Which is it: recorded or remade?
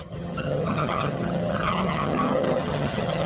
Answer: remade